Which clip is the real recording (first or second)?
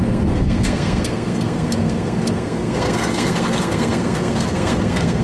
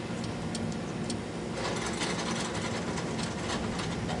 second